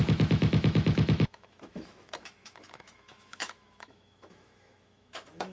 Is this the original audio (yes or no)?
no